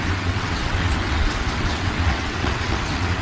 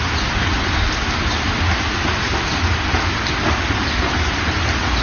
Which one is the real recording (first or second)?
second